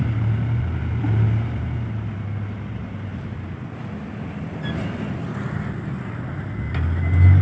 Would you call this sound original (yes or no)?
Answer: yes